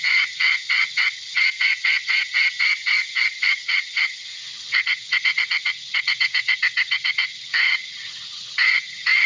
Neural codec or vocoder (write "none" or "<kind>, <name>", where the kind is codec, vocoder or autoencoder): vocoder, HiFi-GAN